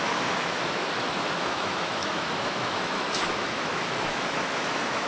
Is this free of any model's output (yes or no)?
no